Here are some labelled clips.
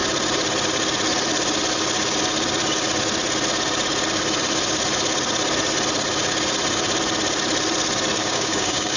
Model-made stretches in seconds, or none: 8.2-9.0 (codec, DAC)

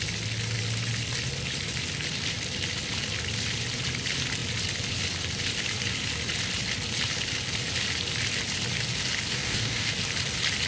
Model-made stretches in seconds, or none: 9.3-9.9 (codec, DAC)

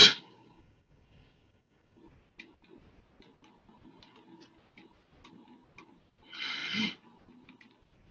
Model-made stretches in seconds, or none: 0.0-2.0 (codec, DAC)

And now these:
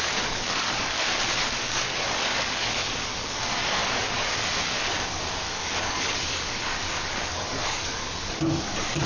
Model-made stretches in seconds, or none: 0.0-1.0 (codec, DAC); 1.5-9.1

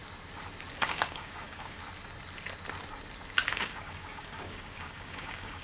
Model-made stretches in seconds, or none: 0.8-1.8 (codec, DAC); 3.5-5.6

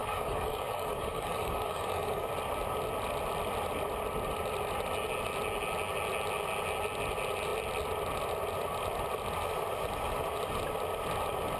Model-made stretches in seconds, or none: 0.0-2.3 (codec, DAC)